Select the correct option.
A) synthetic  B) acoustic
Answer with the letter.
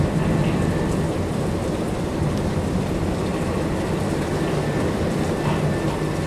B